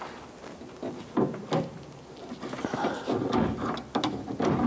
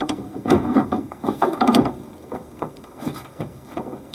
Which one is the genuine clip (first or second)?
first